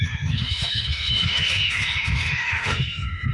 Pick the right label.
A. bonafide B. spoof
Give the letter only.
B